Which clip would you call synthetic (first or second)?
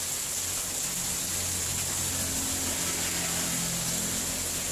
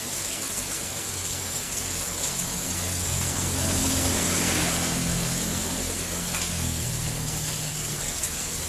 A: second